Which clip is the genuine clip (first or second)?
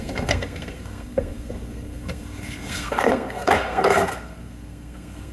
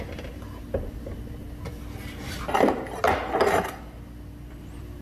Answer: second